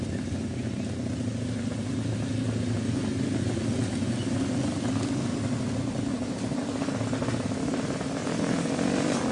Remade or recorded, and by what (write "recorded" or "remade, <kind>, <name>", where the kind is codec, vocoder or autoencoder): recorded